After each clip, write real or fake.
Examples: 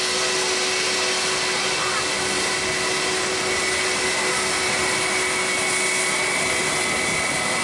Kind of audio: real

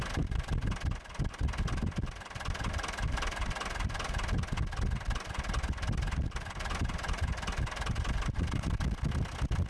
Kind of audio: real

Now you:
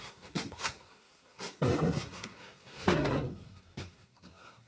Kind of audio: fake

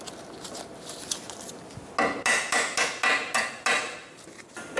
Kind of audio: real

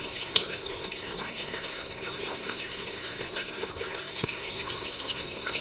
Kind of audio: fake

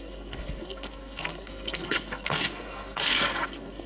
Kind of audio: fake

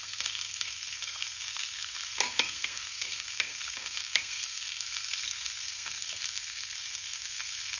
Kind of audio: fake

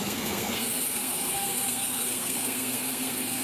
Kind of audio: fake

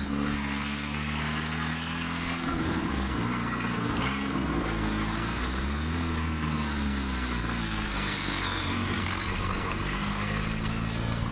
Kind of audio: fake